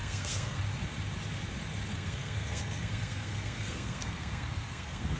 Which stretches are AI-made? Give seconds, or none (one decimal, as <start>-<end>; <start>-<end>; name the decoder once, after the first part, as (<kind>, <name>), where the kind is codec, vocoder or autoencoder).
0.0-0.6 (codec, SNAC); 1.9-5.2